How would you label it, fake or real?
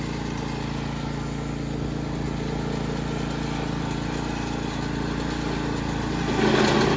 real